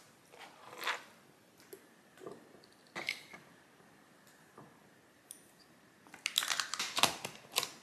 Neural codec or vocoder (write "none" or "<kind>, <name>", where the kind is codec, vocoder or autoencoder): none